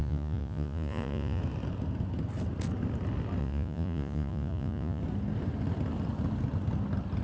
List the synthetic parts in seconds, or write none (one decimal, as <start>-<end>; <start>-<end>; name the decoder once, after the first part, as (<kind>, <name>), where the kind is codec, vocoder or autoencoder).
0.0-1.4 (vocoder, Vocos); 3.4-5.0